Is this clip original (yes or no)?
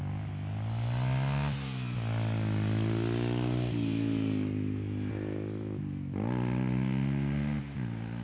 yes